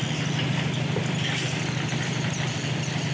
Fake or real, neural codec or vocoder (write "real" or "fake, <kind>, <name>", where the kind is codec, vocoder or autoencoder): real